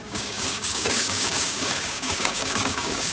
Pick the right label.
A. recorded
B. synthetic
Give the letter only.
B